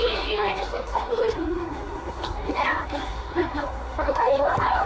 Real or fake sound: fake